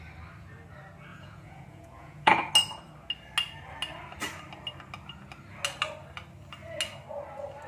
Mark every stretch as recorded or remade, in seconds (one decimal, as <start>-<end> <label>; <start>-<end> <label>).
0.0-1.1 recorded; 1.1-2.5 remade; 2.5-7.7 recorded